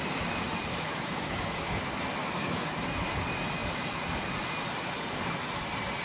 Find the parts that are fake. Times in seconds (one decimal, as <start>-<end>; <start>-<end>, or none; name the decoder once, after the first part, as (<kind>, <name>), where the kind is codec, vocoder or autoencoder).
0.7-1.8 (autoencoder, DAC-VAE); 2.2-2.7